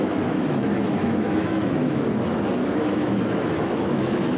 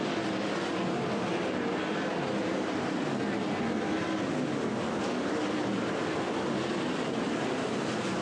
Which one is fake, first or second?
first